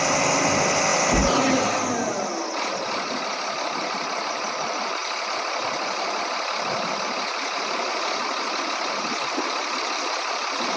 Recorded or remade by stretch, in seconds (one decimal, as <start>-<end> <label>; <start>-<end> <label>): 0.0-10.8 recorded

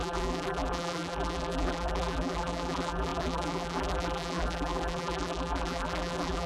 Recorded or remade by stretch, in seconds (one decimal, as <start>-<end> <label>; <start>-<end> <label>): 0.0-6.5 remade

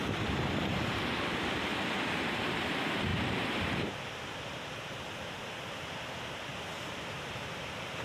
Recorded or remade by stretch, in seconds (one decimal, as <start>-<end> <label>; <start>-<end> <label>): 0.0-1.7 remade; 1.7-2.5 recorded; 2.5-3.1 remade; 3.1-7.3 recorded; 7.3-8.0 remade

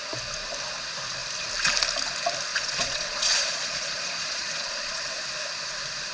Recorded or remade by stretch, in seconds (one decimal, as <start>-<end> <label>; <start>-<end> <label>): 0.0-2.5 recorded; 2.5-5.2 remade; 5.2-6.1 recorded

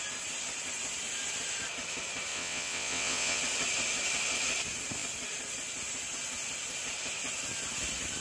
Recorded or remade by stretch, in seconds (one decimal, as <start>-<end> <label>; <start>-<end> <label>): 0.0-2.3 recorded; 2.3-3.4 remade; 3.4-8.2 recorded